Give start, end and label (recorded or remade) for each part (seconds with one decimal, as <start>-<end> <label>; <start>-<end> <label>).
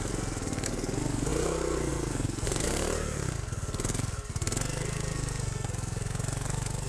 0.0-6.9 remade